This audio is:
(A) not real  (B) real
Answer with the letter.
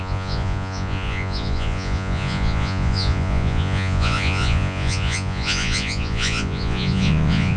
A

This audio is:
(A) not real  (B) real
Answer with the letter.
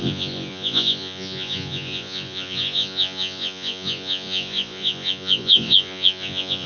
A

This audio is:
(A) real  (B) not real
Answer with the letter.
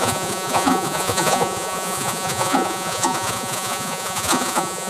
B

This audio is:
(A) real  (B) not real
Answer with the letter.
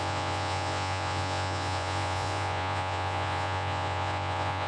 B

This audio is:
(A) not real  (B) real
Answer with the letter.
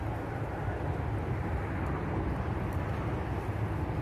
B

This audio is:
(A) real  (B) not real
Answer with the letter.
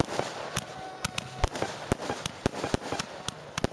A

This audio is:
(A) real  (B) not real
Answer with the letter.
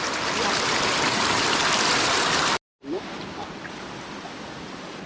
A